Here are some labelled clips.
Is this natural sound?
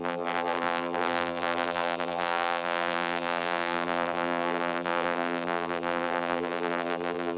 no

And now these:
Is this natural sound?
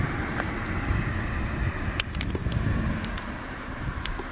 no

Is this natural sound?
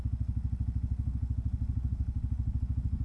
yes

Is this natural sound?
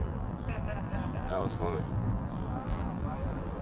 no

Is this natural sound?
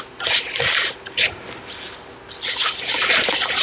yes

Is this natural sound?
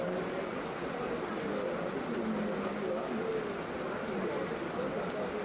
yes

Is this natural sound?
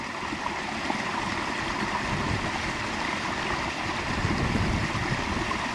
no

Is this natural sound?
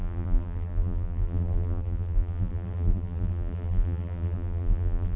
no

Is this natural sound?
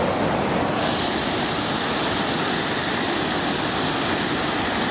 yes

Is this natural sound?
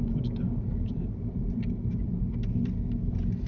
yes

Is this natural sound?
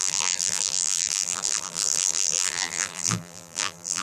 no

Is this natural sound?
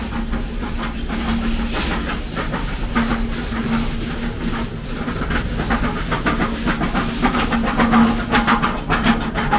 yes